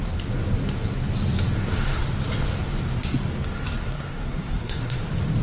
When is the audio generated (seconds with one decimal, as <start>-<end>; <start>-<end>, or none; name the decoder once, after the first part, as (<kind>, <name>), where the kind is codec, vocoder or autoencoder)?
3.9-5.0 (codec, SNAC)